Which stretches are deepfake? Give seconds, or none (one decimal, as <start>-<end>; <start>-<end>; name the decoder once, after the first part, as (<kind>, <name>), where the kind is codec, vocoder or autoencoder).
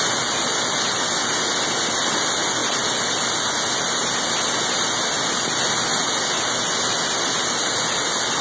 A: none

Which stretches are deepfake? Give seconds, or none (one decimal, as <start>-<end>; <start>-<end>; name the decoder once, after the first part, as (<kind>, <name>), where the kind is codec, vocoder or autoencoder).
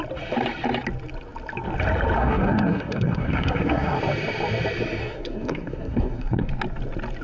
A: 2.2-4.0 (codec, SNAC); 5.0-6.5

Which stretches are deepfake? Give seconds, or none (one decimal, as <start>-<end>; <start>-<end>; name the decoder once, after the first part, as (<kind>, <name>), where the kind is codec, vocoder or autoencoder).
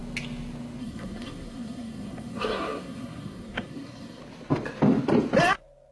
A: 0.8-4.2 (codec, SNAC)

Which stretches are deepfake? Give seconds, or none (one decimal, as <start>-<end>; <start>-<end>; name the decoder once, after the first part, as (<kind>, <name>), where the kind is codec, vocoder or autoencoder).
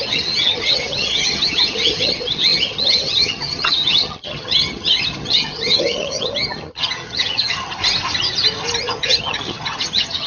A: 0.0-7.8 (vocoder, HiFi-GAN); 8.8-10.3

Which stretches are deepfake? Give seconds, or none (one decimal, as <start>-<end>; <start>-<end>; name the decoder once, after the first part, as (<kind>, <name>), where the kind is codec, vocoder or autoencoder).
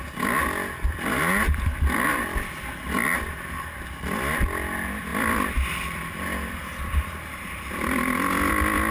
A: 2.1-2.7 (vocoder, BigVGAN v2); 5.1-8.5